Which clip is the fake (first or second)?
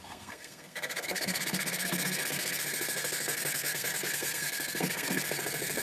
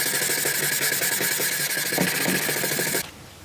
first